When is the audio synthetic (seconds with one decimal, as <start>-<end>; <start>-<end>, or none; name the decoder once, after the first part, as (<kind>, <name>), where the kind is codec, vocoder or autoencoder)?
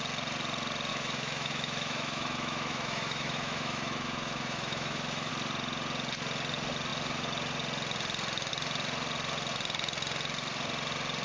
0.9-5.3 (autoencoder, DAC-VAE)